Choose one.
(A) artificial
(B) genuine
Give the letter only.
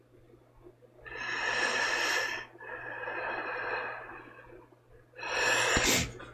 B